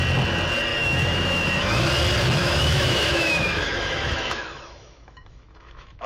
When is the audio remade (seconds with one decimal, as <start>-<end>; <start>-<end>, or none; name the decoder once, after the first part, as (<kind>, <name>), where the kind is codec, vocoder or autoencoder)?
0.7-1.9 (autoencoder, DAC-VAE); 2.4-6.1